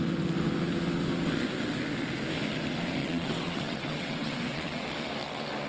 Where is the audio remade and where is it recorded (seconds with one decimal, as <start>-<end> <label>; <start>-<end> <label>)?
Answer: 0.0-3.0 recorded; 3.0-4.9 remade; 4.9-5.7 recorded